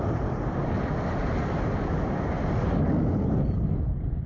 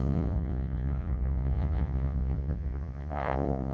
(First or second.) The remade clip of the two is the second